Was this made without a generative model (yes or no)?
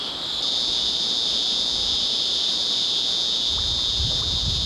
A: yes